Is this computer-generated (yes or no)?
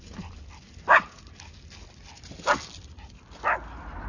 no